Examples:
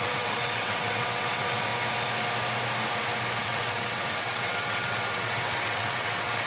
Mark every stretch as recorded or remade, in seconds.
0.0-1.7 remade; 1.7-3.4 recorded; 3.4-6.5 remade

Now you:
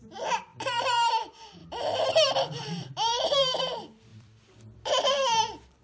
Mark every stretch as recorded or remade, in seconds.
0.0-0.5 recorded; 0.5-1.1 remade; 1.1-1.6 recorded; 1.6-3.6 remade; 3.6-4.1 recorded; 4.1-5.8 remade

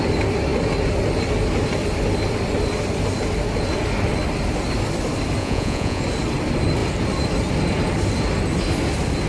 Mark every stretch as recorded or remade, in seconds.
0.0-5.4 recorded; 5.4-6.0 remade; 6.0-9.3 recorded

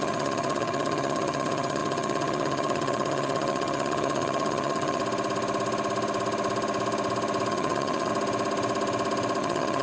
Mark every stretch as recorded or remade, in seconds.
0.0-5.0 remade; 5.0-7.5 recorded; 7.5-8.1 remade; 8.1-9.4 recorded; 9.4-9.8 remade

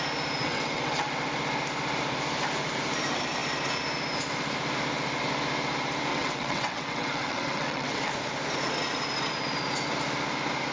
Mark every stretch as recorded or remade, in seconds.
0.0-0.4 recorded; 0.4-1.1 remade; 1.1-6.1 recorded; 6.1-8.1 remade; 8.1-10.7 recorded

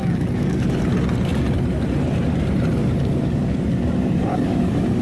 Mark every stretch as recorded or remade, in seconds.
0.0-0.8 remade; 0.8-2.8 recorded; 2.8-3.7 remade; 3.7-4.3 recorded; 4.3-5.0 remade

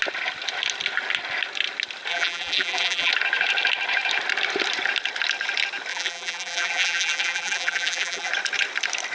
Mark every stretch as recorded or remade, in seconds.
0.0-2.1 recorded; 2.1-3.1 remade; 3.1-5.9 recorded; 5.9-8.3 remade; 8.3-9.1 recorded

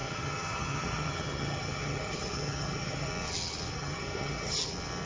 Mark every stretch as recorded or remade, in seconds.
0.0-3.1 remade; 3.1-3.7 recorded; 3.7-4.6 remade; 4.6-5.1 recorded